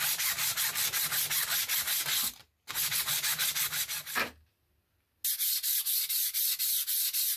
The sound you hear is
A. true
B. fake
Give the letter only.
A